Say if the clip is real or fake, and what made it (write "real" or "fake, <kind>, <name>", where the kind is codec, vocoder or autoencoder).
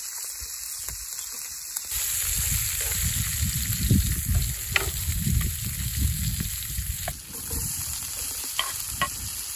real